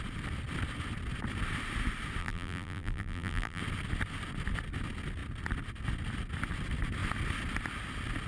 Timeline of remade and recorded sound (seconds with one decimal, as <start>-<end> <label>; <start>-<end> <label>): 0.0-2.2 recorded; 2.2-3.6 remade; 3.6-8.3 recorded